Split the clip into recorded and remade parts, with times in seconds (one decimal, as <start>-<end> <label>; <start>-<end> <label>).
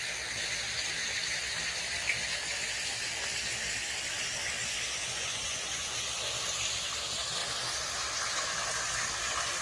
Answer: 0.0-5.0 recorded; 5.0-6.0 remade; 6.0-9.6 recorded